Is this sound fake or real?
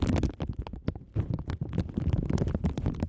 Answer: real